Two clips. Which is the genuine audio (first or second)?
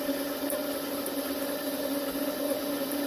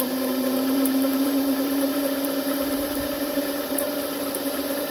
first